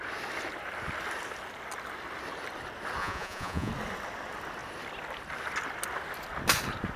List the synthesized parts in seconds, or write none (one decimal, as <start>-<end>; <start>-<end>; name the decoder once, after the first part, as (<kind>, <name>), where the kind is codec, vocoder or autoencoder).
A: 3.0-3.7 (vocoder, Vocos)